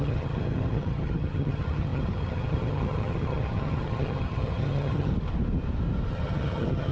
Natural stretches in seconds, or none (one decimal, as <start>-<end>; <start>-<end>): 5.1-6.1